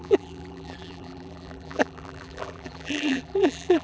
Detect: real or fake fake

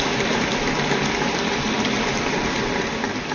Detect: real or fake real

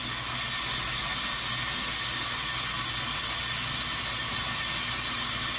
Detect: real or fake real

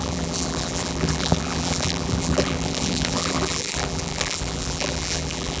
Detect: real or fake fake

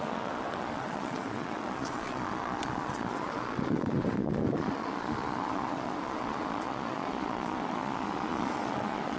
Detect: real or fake fake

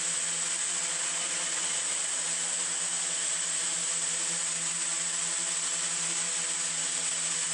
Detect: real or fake real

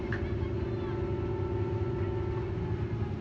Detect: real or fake real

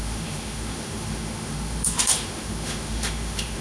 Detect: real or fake fake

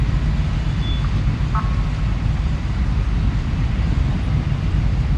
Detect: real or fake real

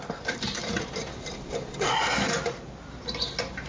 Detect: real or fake real